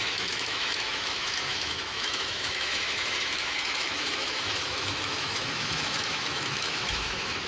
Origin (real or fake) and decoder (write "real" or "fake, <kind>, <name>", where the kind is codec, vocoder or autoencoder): fake, autoencoder, DAC-VAE